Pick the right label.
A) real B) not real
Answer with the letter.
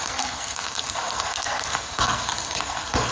B